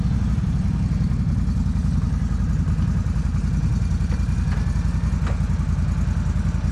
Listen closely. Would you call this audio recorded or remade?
recorded